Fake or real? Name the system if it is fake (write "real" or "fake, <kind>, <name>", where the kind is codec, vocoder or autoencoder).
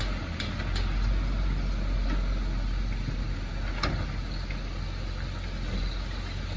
real